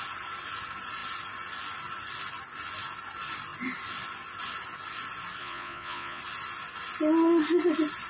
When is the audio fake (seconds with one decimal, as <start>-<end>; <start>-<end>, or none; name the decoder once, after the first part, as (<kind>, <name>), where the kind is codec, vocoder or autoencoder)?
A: 5.4-6.2 (vocoder, Vocos)